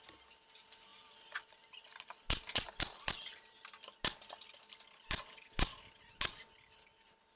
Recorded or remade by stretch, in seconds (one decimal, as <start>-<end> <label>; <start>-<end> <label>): 0.0-7.4 recorded